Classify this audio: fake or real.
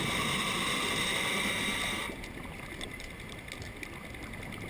real